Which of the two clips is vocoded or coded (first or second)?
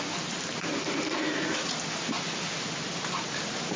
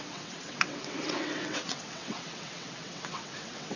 second